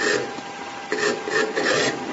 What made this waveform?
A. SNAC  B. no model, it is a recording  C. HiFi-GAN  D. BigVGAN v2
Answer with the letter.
B